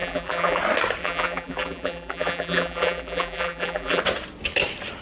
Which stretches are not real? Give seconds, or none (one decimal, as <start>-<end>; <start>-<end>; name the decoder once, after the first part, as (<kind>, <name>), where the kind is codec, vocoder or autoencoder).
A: 0.0-0.6 (vocoder, BigVGAN v2); 1.0-4.0